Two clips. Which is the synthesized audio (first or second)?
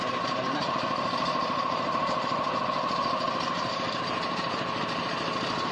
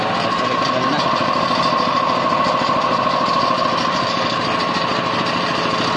first